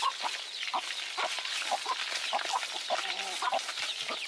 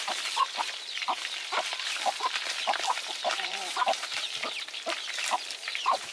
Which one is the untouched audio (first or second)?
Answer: first